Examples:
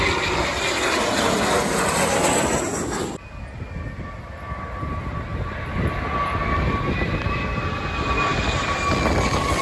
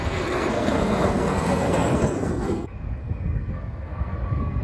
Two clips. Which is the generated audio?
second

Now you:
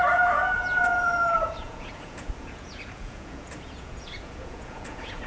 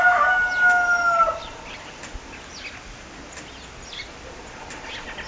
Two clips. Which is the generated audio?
first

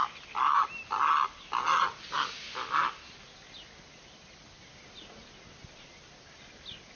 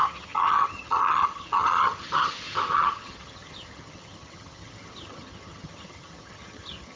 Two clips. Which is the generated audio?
second